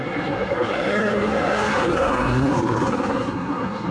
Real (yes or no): no